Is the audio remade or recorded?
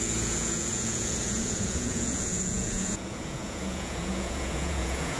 remade